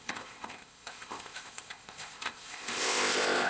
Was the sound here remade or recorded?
remade